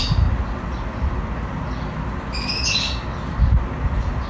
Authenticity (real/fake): real